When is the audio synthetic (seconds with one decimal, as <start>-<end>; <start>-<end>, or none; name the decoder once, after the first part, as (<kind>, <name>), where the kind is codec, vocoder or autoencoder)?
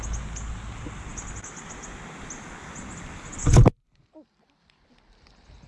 none